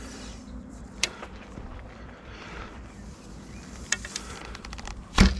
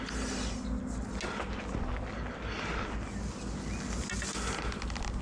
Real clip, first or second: second